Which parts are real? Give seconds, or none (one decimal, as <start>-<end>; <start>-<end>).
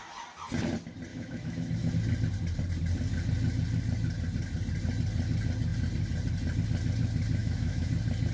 0.0-1.1; 1.9-7.4; 7.9-8.3